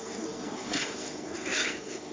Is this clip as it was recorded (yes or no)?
no